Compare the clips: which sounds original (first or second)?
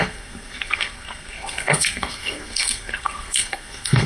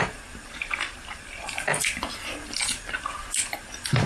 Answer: second